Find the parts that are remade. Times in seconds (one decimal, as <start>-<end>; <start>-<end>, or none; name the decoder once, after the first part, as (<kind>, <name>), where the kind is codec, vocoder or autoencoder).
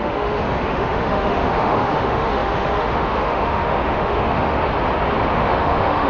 0.0-4.7 (autoencoder, DAC-VAE); 5.3-6.1